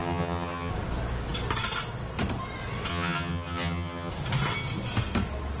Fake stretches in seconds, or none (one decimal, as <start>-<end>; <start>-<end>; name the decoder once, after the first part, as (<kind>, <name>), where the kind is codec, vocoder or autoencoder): 0.0-0.7 (vocoder, HiFi-GAN); 2.9-4.1

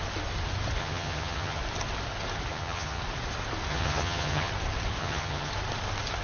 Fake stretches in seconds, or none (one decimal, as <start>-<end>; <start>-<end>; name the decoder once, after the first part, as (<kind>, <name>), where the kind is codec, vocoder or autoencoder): 0.8-1.6 (vocoder, HiFi-GAN); 2.5-3.0; 3.7-4.5; 5.0-5.5

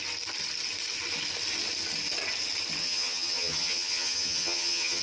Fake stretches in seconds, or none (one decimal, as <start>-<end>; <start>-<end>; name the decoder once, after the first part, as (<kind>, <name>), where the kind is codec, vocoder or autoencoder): 2.8-5.0 (vocoder, HiFi-GAN)

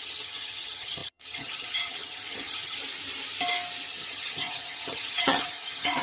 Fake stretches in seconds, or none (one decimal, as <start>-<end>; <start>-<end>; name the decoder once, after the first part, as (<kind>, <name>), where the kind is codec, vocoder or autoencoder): 0.0-2.8 (vocoder, HiFi-GAN); 3.9-6.0

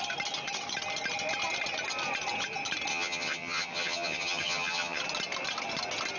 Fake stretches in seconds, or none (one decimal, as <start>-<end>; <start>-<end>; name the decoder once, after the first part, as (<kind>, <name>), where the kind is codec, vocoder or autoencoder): 2.9-5.0 (vocoder, HiFi-GAN)

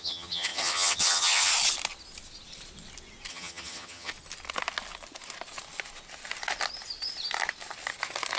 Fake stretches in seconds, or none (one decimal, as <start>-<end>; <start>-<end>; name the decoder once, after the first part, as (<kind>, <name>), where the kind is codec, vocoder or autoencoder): 0.0-1.5 (vocoder, HiFi-GAN); 3.3-4.1

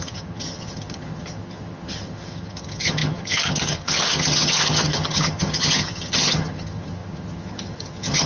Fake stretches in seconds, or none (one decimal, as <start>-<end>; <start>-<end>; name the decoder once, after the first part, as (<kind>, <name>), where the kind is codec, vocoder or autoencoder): 0.0-8.3 (vocoder, HiFi-GAN)